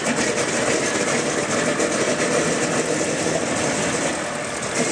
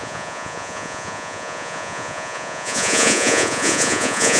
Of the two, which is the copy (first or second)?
second